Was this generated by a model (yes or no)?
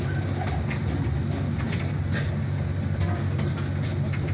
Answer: no